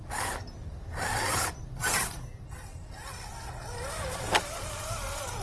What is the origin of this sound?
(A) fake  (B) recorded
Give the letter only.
B